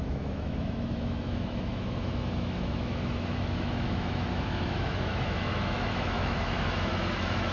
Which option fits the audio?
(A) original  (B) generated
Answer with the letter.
B